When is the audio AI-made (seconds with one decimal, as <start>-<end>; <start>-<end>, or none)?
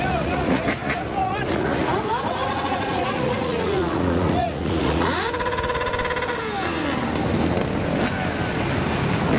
0.0-5.9